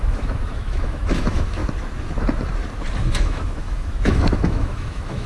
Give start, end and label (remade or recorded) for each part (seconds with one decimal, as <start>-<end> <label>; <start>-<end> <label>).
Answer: 0.0-1.6 remade; 1.6-3.1 recorded; 3.1-5.3 remade